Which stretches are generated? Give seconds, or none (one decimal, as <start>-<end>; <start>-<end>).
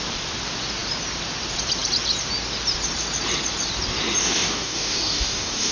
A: 4.2-5.7